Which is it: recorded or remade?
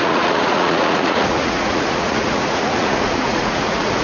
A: remade